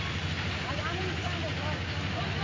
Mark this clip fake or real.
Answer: real